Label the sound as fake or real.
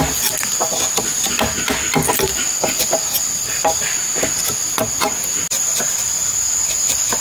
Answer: real